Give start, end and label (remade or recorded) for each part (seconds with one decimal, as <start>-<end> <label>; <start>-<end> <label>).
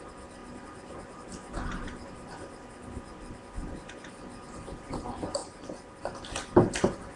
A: 0.0-7.2 recorded